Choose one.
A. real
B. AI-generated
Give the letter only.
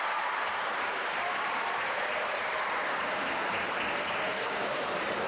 B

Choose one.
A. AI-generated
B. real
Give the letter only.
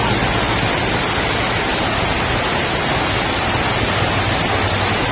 B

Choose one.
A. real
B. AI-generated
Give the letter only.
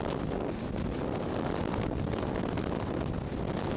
A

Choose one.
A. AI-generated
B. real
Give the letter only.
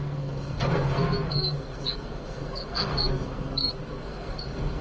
A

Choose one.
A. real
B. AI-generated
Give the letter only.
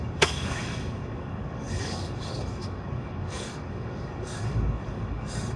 B